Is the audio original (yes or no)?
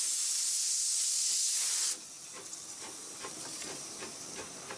yes